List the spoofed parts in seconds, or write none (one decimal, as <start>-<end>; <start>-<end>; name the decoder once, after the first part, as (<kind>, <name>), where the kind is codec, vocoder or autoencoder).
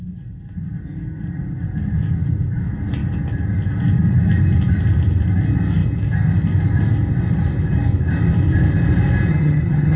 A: 9.3-10.0 (vocoder, HiFi-GAN)